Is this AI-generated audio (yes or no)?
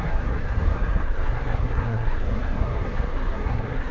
yes